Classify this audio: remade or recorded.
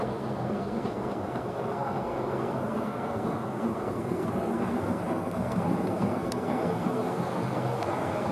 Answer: remade